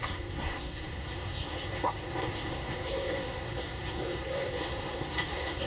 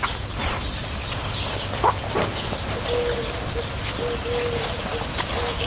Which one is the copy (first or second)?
first